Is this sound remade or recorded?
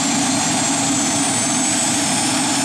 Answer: recorded